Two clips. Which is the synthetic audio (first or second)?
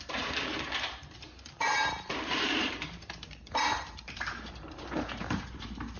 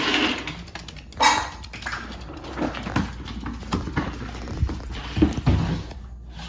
first